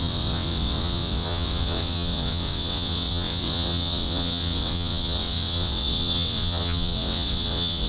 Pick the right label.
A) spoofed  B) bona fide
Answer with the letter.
A